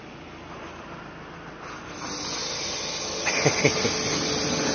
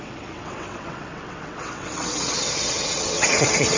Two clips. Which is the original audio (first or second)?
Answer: first